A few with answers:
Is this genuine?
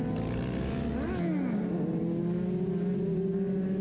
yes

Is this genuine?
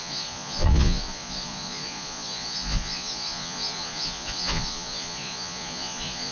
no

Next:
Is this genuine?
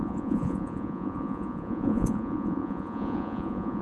no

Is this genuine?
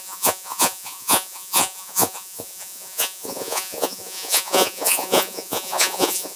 no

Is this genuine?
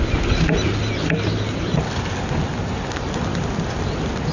yes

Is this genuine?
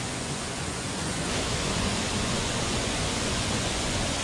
no